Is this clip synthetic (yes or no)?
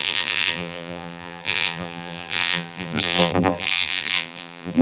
yes